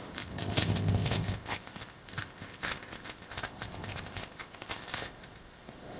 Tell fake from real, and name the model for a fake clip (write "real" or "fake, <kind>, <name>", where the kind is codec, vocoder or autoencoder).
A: fake, codec, ZipCodec